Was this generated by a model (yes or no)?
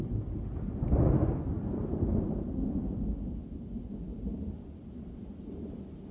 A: no